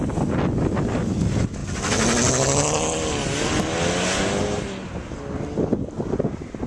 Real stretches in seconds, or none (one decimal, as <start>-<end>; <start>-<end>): 0.0-6.7